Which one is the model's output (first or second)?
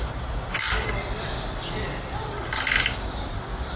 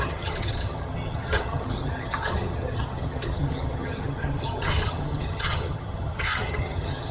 second